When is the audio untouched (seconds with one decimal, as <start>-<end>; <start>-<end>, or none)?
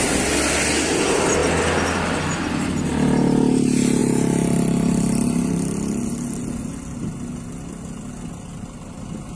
0.0-9.4